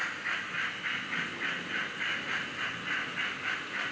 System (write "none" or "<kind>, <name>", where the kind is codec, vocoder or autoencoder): none